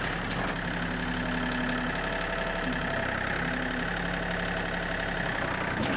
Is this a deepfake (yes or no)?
no